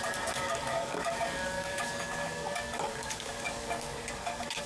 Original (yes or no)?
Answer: no